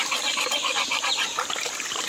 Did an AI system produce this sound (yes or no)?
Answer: no